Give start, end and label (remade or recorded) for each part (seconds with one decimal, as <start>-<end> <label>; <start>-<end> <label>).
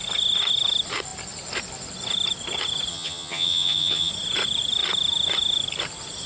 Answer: 0.0-2.9 recorded; 2.9-4.1 remade; 4.1-6.3 recorded